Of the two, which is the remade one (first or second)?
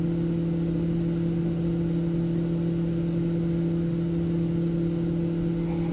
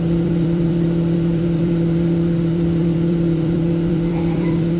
second